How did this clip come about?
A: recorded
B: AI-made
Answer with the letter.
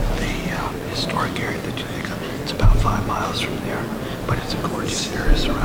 A